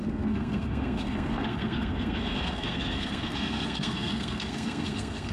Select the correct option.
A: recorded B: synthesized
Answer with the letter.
B